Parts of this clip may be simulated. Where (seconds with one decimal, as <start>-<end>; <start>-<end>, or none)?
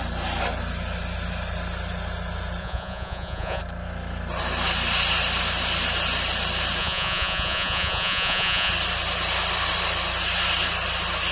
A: 2.6-3.6; 6.8-8.7